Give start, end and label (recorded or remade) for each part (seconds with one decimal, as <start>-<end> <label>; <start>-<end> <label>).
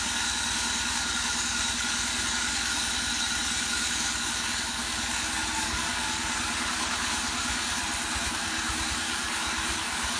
0.0-7.8 remade; 7.8-8.3 recorded; 8.3-10.2 remade